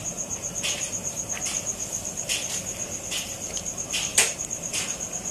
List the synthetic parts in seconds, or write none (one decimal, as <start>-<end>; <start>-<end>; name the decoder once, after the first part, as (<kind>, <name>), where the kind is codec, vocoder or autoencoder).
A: none

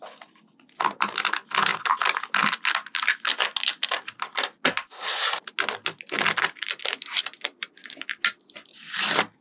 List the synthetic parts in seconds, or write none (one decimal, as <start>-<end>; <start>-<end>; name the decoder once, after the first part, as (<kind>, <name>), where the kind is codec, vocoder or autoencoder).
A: none

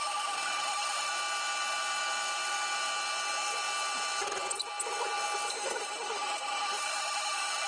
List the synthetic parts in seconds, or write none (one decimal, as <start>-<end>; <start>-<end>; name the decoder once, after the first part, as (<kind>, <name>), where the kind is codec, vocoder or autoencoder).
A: 0.0-1.1 (autoencoder, DAC-VAE); 5.5-7.7